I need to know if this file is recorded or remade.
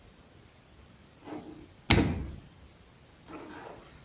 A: recorded